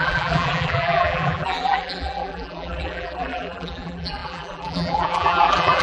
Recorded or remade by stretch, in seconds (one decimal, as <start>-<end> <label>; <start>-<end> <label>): 0.0-5.8 remade